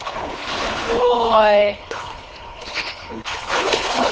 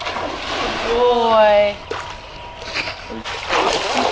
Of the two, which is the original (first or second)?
second